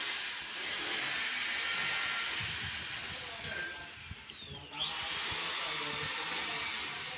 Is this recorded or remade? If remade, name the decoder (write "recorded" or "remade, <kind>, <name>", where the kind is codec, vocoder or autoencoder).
recorded